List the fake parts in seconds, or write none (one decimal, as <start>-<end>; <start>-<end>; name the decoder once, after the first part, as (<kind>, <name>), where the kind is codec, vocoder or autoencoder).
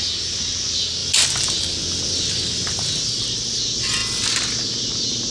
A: none